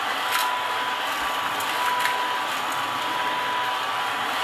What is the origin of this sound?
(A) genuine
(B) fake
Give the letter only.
A